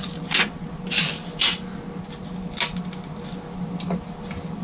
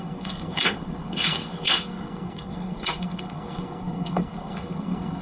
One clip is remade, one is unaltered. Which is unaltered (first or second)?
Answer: first